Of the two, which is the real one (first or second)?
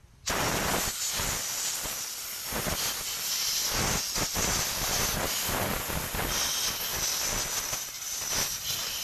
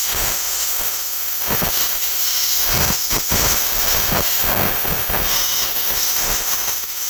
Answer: first